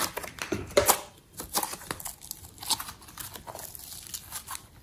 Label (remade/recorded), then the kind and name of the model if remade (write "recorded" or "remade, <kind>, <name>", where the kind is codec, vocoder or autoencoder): recorded